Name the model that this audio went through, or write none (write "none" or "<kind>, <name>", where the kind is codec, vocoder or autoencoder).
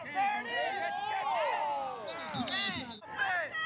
none